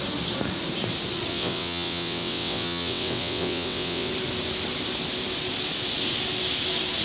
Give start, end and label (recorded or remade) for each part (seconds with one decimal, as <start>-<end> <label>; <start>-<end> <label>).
0.0-1.3 recorded; 1.3-4.1 remade; 4.1-7.0 recorded